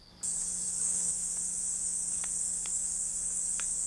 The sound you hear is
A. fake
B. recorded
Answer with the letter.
A